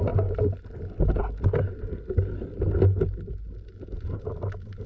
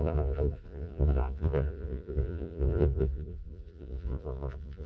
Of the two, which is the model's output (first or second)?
second